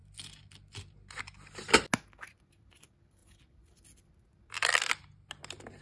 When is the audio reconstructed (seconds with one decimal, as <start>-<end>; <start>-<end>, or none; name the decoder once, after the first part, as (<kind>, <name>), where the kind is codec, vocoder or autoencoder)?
none